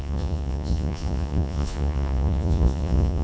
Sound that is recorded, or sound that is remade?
remade